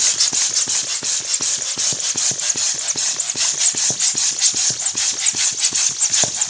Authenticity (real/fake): real